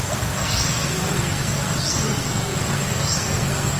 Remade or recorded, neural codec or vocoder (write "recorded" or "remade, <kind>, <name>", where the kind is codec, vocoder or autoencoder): remade, codec, SNAC